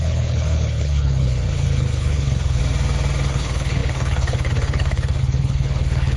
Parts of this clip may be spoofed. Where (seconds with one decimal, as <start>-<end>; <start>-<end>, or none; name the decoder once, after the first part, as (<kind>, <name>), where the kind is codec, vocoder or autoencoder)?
0.0-2.6 (codec, HILCodec); 3.3-6.2